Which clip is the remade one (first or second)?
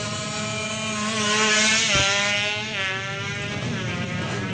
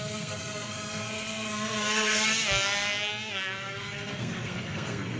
second